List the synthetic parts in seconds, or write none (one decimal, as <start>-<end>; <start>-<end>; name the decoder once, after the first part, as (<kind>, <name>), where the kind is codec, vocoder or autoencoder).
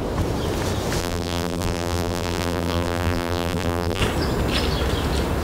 1.0-4.0 (vocoder, BigVGAN v2)